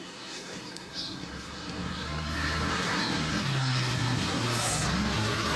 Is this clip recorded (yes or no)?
no